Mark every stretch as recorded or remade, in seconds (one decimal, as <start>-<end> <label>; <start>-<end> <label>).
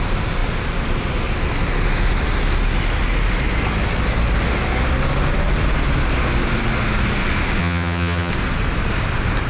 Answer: 0.0-7.6 recorded; 7.6-8.3 remade; 8.3-9.5 recorded